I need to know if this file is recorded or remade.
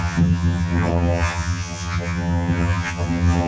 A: remade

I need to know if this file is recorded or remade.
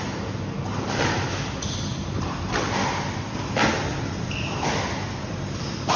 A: recorded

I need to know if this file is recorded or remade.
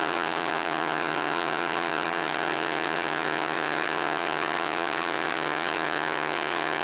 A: remade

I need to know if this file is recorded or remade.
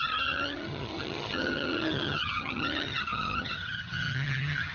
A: remade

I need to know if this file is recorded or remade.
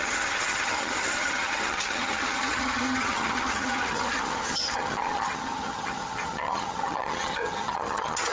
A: remade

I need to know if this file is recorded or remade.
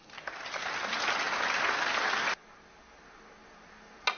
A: recorded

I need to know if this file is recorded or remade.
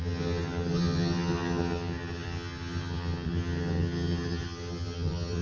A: remade